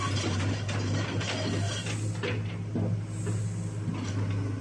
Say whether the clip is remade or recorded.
recorded